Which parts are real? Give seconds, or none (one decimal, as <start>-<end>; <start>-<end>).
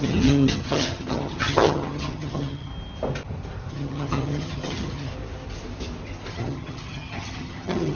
2.7-3.7; 5.1-6.3